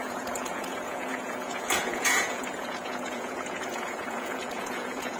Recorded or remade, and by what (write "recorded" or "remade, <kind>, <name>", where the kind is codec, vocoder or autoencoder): remade, vocoder, Vocos